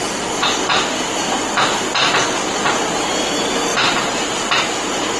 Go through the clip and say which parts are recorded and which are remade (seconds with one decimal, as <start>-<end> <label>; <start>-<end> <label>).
0.0-3.7 recorded; 3.7-4.6 remade; 4.6-5.2 recorded

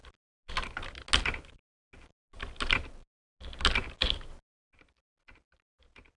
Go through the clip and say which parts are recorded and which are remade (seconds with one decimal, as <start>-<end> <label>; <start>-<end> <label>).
0.0-6.2 recorded

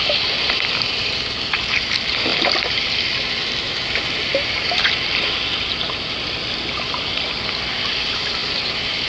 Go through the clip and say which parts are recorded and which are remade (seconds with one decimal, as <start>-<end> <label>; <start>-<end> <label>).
0.0-9.1 recorded

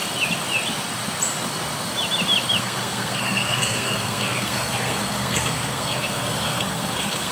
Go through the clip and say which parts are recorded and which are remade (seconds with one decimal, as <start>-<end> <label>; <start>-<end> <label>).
0.0-2.6 recorded; 2.6-7.3 remade

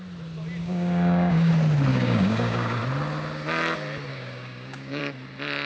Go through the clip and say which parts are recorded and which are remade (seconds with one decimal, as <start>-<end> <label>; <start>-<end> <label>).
0.0-0.6 recorded; 0.6-1.5 remade; 1.5-1.9 recorded; 1.9-2.8 remade; 2.8-4.1 recorded; 4.1-5.0 remade; 5.0-5.7 recorded

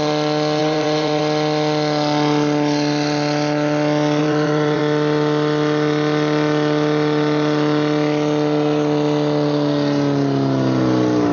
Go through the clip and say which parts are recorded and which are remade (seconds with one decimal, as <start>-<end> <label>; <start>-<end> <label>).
0.0-0.6 recorded; 0.6-1.2 remade; 1.2-4.2 recorded; 4.2-4.8 remade; 4.8-11.3 recorded

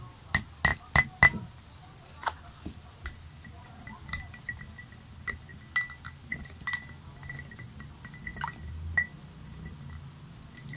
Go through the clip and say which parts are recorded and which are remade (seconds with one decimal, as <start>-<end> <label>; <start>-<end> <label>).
0.0-8.3 recorded; 8.3-10.2 remade; 10.2-10.8 recorded

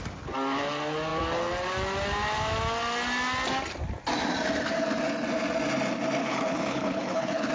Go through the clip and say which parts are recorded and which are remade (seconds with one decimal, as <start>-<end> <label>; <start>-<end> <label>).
0.0-6.2 recorded; 6.2-7.5 remade